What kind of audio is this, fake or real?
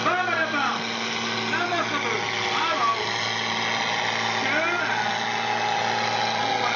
real